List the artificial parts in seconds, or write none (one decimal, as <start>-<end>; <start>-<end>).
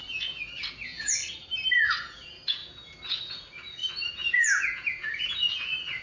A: 0.0-1.2; 1.8-6.0